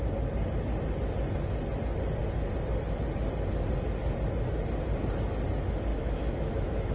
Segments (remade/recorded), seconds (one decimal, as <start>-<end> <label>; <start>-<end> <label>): 0.0-5.9 recorded; 5.9-6.9 remade